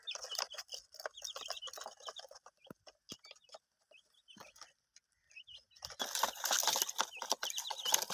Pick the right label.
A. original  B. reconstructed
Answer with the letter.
A